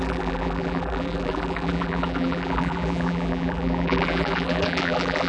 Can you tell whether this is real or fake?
fake